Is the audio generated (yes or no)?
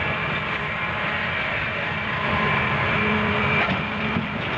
no